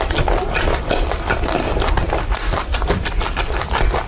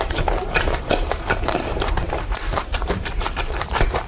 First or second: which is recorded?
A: first